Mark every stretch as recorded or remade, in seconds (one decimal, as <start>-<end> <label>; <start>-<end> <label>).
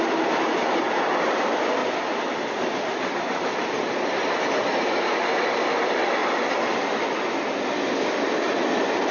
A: 0.0-1.8 recorded; 1.8-4.4 remade; 4.4-9.1 recorded